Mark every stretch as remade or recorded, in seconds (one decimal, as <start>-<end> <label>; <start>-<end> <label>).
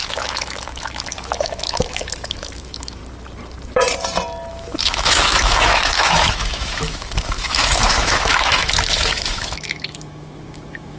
0.0-3.0 remade; 3.0-4.5 recorded; 4.5-11.0 remade